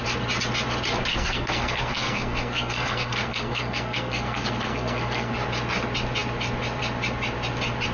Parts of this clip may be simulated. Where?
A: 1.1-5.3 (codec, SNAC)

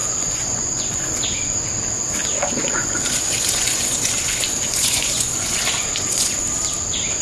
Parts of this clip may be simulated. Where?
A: 0.0-1.0 (vocoder, Vocos); 2.2-6.4

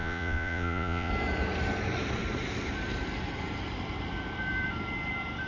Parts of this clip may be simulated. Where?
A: 0.0-1.1 (vocoder, Vocos)

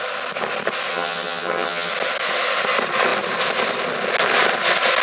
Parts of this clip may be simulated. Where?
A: 0.9-1.9 (vocoder, HiFi-GAN)